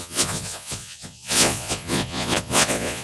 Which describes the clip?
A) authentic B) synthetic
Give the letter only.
B